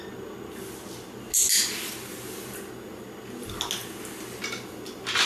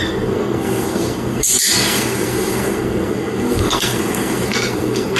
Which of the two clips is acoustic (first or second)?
first